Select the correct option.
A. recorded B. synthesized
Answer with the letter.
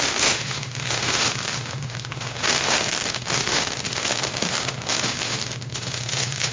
B